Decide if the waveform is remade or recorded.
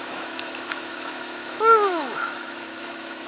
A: remade